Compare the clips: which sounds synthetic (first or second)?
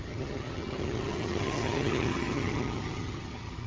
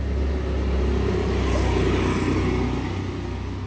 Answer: first